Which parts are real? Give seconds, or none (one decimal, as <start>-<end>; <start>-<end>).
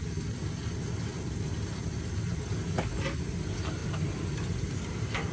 0.0-3.8; 4.8-5.3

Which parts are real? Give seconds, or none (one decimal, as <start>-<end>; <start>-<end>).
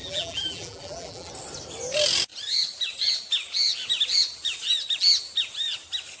1.3-6.2